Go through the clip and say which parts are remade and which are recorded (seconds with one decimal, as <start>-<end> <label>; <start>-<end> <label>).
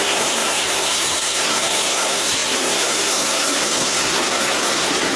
0.0-5.2 remade